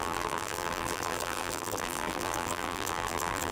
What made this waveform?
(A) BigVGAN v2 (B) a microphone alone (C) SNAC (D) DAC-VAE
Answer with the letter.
A